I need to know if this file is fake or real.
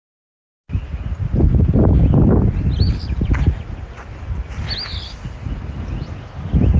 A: real